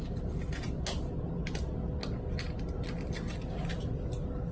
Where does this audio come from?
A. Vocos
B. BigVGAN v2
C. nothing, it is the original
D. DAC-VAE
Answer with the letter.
C